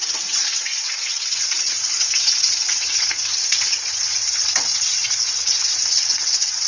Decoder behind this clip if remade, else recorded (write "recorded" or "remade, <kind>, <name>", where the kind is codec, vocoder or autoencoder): remade, vocoder, WaveNeXt